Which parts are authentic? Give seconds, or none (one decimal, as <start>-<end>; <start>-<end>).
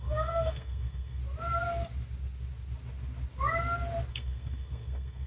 1.2-4.1